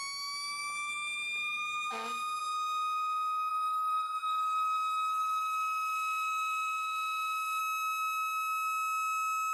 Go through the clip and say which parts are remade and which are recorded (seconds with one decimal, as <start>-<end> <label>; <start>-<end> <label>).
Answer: 0.0-3.5 recorded; 3.5-7.6 remade; 7.6-9.5 recorded

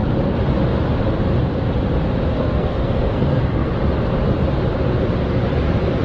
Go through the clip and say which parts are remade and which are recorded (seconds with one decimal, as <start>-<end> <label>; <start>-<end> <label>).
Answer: 0.0-2.4 recorded; 2.4-3.7 remade; 3.7-6.0 recorded

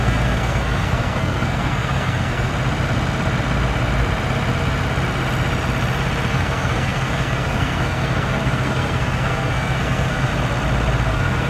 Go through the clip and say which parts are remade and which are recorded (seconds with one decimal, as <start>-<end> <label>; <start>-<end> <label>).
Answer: 0.0-2.5 remade; 2.5-6.3 recorded; 6.3-10.3 remade; 10.3-11.1 recorded; 11.1-11.5 remade

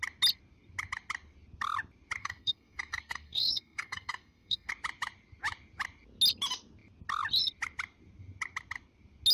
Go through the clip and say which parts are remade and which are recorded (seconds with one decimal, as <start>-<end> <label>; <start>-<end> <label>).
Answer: 0.0-2.2 recorded; 2.2-4.7 remade; 4.7-9.3 recorded

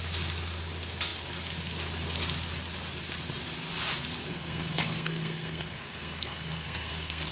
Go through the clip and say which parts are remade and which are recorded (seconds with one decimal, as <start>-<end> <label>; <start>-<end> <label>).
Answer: 0.0-4.3 recorded; 4.3-7.3 remade